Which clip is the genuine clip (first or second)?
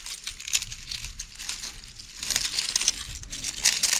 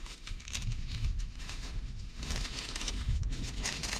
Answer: first